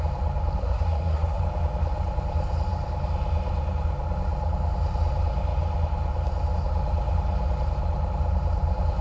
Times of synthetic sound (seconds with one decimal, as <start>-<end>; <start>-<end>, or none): 0.6-1.4